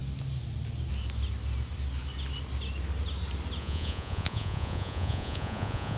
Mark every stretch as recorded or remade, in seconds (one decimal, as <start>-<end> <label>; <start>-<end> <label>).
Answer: 0.0-3.6 recorded; 3.6-6.0 remade